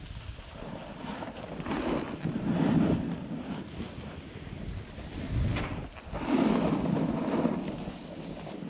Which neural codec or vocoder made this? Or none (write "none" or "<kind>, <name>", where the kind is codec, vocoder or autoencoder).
none